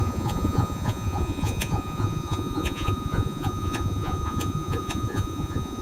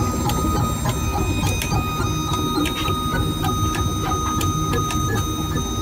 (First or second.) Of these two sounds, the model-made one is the first